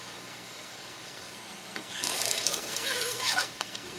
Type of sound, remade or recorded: remade